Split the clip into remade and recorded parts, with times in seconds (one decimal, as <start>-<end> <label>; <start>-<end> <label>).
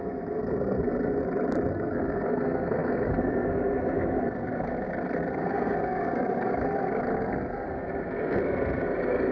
0.0-1.2 remade; 1.2-1.7 recorded; 1.7-9.3 remade